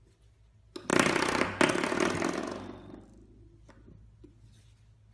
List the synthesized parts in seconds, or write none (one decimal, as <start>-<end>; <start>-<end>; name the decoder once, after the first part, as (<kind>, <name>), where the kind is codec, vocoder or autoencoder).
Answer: none

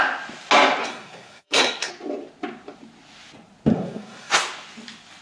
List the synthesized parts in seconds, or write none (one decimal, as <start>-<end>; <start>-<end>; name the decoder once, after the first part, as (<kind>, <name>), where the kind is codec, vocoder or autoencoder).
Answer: 0.8-1.9 (codec, SNAC); 3.7-4.3

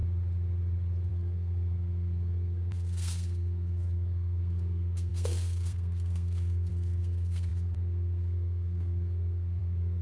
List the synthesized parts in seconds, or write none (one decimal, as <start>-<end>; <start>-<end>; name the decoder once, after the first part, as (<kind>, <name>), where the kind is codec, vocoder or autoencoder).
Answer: 1.1-10.0 (codec, SNAC)

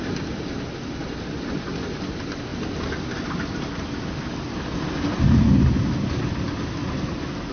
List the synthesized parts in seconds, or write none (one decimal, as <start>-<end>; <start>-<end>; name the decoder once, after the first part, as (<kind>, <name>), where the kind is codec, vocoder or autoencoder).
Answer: none

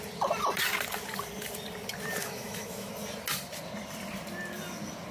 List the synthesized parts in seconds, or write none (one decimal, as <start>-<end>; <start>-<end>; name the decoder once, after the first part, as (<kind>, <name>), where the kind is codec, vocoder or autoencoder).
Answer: 2.2-2.9 (autoencoder, DAC-VAE)

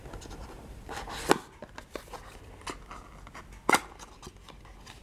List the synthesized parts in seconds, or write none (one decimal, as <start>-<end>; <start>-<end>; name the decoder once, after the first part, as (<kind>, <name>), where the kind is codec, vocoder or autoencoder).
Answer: 0.0-1.3 (vocoder, BigVGAN v2)

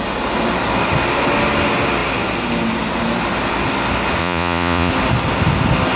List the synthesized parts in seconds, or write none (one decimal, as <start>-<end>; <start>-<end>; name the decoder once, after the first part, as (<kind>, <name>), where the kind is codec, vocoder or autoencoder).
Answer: 4.2-4.9 (vocoder, Vocos)